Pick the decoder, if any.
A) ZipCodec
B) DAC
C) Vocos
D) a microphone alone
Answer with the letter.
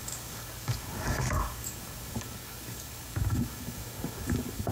B